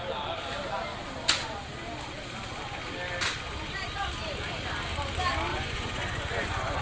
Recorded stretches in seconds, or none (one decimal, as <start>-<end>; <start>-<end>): 0.0-5.5